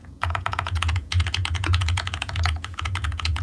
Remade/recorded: remade